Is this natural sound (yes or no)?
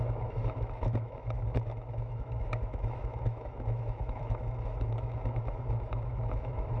no